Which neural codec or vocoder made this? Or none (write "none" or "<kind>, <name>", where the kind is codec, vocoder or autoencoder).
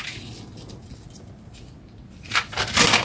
none